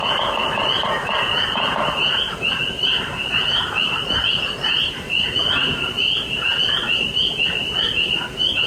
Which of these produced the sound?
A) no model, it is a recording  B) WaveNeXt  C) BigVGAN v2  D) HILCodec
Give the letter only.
A